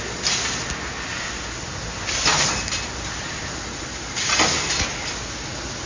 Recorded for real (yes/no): yes